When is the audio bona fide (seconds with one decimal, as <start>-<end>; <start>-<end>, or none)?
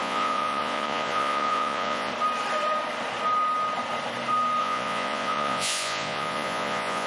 2.1-4.6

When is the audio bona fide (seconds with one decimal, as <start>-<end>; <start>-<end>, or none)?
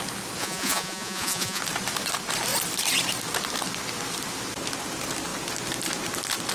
0.0-0.4; 1.6-6.5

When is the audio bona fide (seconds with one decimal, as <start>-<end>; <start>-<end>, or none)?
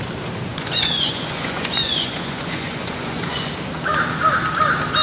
0.0-0.5; 3.5-5.0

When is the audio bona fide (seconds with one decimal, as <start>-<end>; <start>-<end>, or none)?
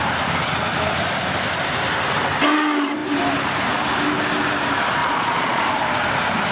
0.0-5.0; 5.6-6.5